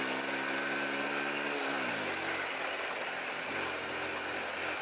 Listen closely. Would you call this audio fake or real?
real